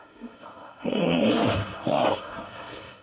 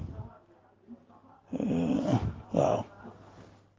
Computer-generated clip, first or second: first